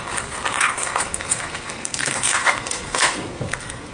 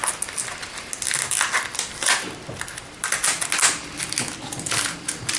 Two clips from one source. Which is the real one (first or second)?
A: second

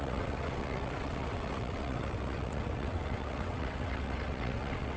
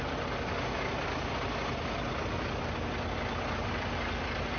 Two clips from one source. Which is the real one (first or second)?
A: second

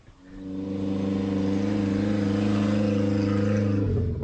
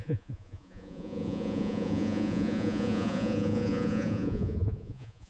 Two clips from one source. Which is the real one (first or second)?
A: first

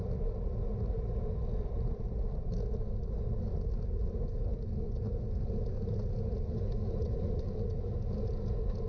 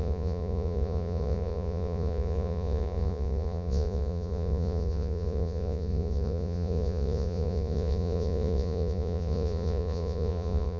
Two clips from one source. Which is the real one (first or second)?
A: first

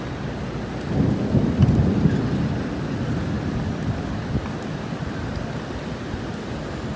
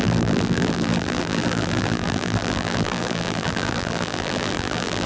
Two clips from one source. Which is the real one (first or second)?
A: first